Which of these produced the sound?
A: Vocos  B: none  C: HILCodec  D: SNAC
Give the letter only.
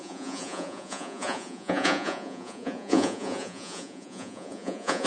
A